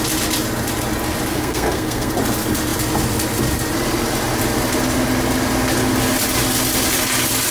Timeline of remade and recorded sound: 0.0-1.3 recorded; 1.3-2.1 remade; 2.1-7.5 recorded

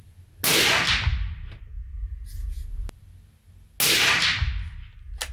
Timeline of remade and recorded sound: 0.0-5.3 recorded